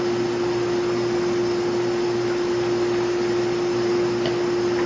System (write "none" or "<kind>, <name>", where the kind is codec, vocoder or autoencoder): none